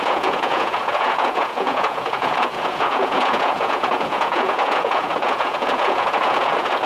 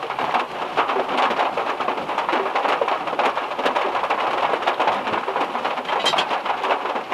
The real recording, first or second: second